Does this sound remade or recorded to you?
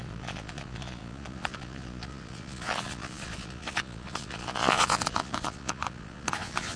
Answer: remade